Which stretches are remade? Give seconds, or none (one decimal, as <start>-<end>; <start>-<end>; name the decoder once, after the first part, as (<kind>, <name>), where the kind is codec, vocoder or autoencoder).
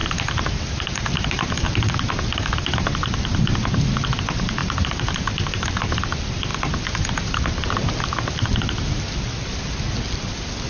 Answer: 0.0-1.9 (vocoder, BigVGAN v2); 4.6-6.0